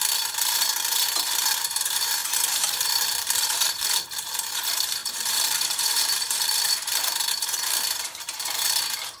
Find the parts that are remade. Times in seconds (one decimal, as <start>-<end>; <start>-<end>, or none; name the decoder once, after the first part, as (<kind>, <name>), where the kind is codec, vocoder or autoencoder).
0.0-9.2 (vocoder, BigVGAN v2)